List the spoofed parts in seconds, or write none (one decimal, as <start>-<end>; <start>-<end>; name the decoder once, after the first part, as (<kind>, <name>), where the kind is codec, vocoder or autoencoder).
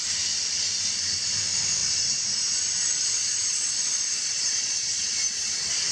3.0-5.0 (vocoder, Vocos)